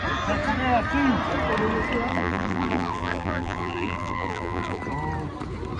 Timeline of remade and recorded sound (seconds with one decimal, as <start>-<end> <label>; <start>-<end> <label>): 0.0-2.1 recorded; 2.1-4.8 remade; 4.8-5.8 recorded

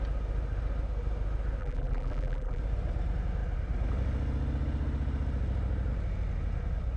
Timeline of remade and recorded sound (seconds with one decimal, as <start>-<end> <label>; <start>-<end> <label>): 0.0-1.6 recorded; 1.6-2.6 remade; 2.6-7.0 recorded

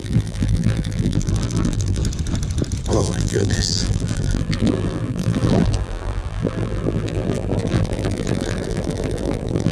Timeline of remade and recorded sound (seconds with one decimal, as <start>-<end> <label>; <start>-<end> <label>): 0.0-2.0 remade; 2.0-3.0 recorded; 3.0-9.7 remade

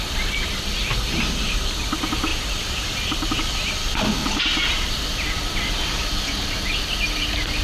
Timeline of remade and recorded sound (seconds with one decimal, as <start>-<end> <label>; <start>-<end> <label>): 0.0-2.3 recorded; 2.3-3.4 remade; 3.4-4.2 recorded; 4.2-5.5 remade; 5.5-7.6 recorded